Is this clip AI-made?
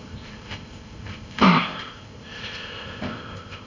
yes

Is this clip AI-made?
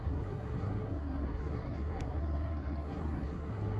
yes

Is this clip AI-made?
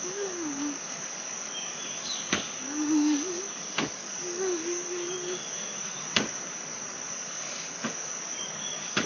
yes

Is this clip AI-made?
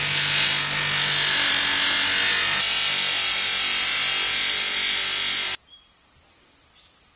no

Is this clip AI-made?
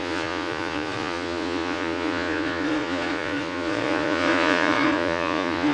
yes